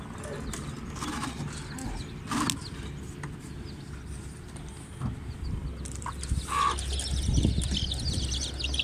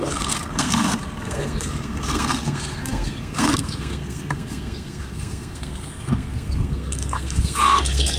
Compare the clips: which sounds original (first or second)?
first